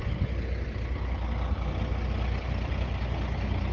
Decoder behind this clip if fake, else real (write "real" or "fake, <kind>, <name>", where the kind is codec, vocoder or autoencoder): real